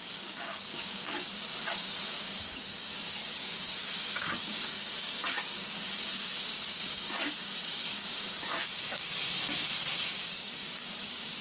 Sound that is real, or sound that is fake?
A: fake